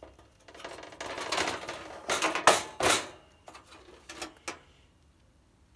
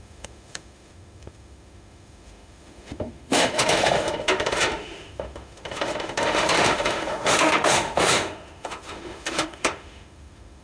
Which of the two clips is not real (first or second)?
second